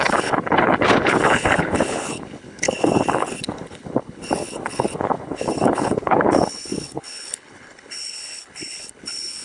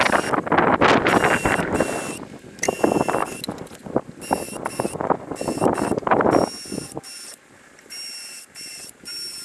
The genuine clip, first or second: second